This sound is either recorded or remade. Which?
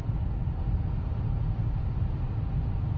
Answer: recorded